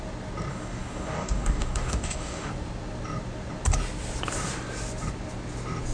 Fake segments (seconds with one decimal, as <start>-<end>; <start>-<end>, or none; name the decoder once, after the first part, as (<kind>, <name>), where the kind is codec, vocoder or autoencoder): 0.5-2.5 (codec, DAC)